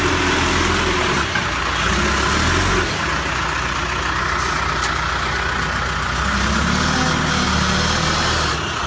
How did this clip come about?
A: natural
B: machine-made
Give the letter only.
A